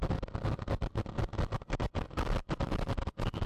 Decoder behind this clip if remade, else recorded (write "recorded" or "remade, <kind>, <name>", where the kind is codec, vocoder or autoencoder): recorded